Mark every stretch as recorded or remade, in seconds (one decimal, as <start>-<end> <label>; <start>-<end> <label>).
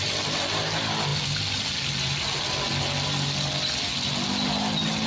0.0-5.1 recorded